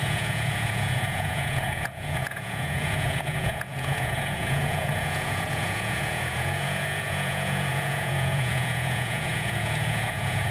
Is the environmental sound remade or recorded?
remade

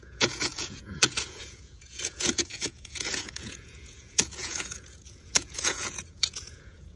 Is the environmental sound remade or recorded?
remade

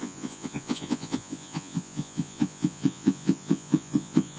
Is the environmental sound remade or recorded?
remade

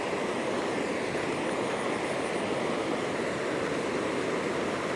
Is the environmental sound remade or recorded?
recorded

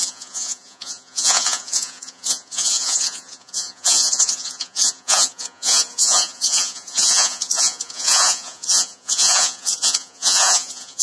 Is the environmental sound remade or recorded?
remade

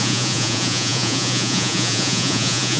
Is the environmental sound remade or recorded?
remade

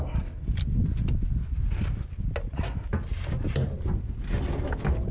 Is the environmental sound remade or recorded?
recorded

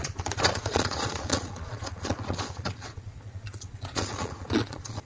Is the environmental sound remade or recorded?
remade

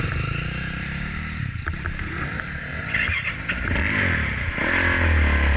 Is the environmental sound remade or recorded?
recorded